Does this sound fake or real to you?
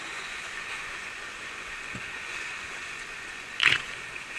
fake